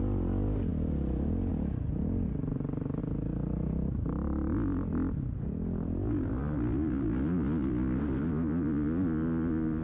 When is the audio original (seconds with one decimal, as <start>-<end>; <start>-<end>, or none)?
0.0-9.8